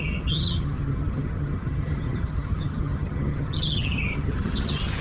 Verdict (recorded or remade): remade